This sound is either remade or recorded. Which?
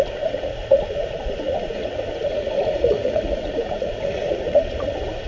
remade